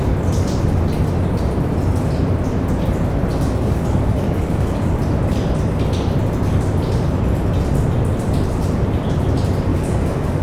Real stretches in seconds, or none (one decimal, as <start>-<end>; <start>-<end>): 0.0-3.3; 5.0-9.7